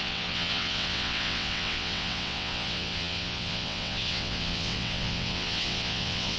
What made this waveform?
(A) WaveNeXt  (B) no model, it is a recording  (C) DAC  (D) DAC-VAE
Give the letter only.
A